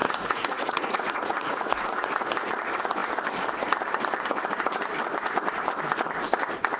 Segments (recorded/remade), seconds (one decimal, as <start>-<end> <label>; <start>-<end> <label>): 0.0-2.1 remade; 2.1-6.8 recorded